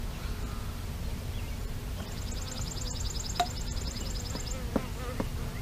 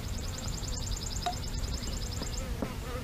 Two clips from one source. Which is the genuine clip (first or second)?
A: first